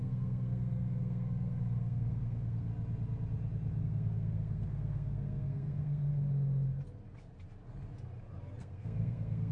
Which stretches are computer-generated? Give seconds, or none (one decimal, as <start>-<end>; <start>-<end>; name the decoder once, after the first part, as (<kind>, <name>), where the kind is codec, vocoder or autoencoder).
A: 0.0-2.7 (codec, SNAC); 3.8-6.1; 8.6-9.5